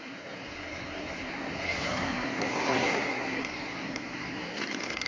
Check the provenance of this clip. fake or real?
fake